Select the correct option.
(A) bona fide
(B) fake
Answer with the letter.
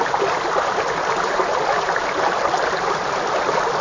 A